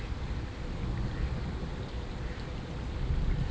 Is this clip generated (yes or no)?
no